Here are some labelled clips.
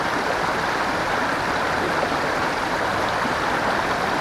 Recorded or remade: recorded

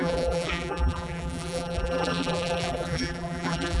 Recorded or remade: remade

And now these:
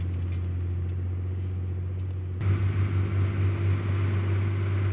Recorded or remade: recorded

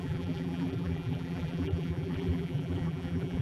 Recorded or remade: remade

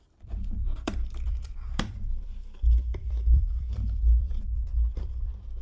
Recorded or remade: remade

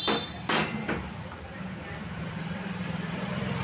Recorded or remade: remade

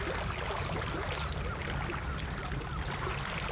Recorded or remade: recorded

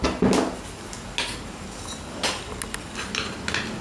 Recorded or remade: recorded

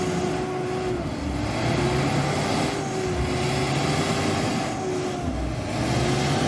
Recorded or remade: recorded